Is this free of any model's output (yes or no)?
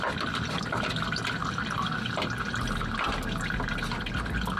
yes